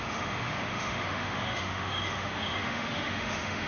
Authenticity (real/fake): fake